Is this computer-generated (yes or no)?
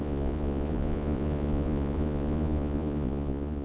yes